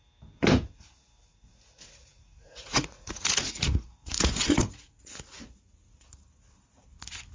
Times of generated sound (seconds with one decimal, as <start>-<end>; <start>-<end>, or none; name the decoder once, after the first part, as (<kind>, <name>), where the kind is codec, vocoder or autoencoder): 1.3-5.7 (vocoder, Vocos)